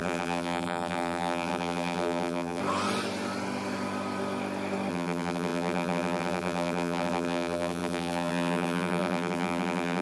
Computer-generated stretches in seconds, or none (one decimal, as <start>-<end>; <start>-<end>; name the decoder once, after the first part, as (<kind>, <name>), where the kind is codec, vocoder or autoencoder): 0.0-2.6 (vocoder, BigVGAN v2); 4.9-10.0